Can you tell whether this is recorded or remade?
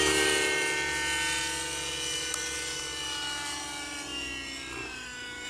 recorded